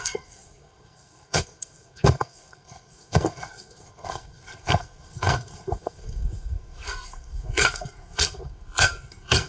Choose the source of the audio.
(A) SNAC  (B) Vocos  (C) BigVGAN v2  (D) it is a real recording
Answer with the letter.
A